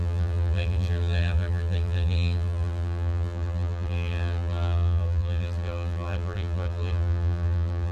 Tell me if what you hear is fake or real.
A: fake